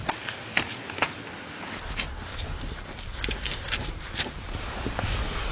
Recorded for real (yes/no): yes